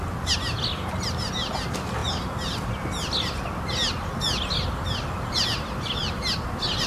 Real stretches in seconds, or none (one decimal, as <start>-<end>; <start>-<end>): 0.0-6.9